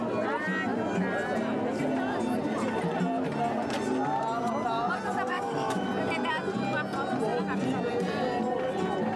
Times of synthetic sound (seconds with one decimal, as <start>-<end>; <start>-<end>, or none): 5.3-5.9